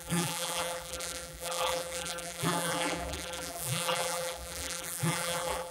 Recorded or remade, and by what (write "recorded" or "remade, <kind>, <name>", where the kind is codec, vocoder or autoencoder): remade, vocoder, BigVGAN v2